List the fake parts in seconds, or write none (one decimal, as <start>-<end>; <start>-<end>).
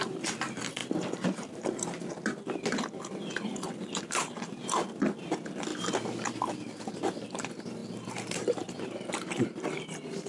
0.0-5.7; 6.3-7.8; 8.4-10.3